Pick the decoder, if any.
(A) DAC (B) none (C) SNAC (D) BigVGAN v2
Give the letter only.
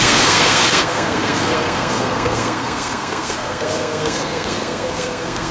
C